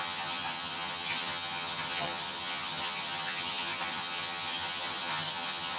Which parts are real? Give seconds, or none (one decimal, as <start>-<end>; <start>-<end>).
none